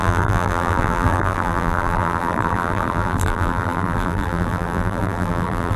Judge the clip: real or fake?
fake